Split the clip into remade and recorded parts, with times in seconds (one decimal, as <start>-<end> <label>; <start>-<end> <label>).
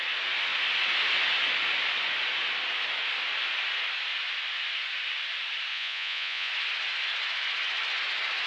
0.0-5.7 recorded; 5.7-6.5 remade; 6.5-8.5 recorded